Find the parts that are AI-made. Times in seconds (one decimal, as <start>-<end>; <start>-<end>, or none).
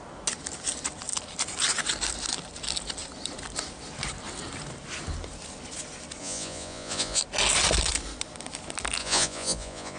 6.2-7.2; 9.0-10.0